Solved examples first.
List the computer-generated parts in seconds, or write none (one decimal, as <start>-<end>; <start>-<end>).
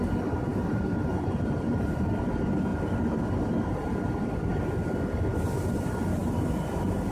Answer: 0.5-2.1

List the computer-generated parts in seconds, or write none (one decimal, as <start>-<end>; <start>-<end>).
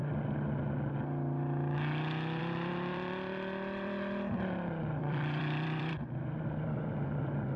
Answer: 2.4-7.6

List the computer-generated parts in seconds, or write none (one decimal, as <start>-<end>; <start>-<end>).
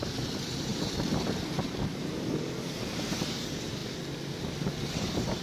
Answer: 0.0-3.8; 4.8-5.4